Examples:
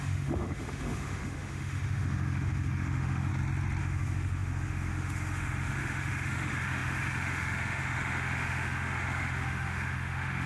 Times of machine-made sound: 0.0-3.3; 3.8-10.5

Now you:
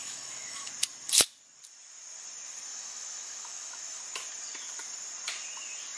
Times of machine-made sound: 0.0-0.7; 2.7-4.0

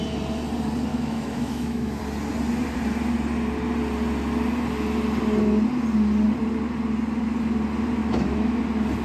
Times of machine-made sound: 0.9-2.0; 8.0-8.6

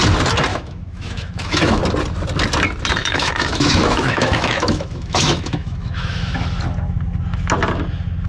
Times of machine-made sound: 0.5-1.8; 3.0-6.3